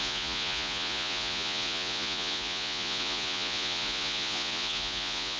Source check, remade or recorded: remade